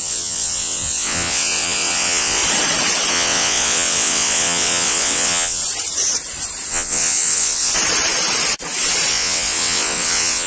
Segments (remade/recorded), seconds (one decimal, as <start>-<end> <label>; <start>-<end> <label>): 0.0-2.4 remade; 2.4-3.1 recorded; 3.1-5.6 remade; 5.6-6.7 recorded; 6.7-7.7 remade; 7.7-9.1 recorded; 9.1-10.5 remade